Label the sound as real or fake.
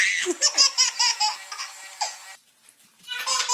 real